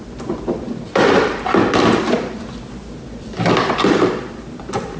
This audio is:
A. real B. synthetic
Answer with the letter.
B